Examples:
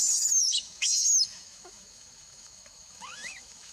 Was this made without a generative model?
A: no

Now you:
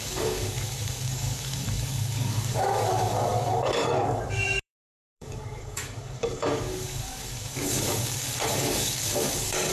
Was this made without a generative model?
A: no